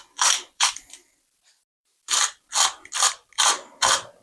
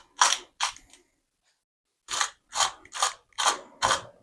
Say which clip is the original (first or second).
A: second